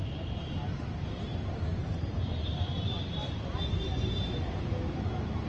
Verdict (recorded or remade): remade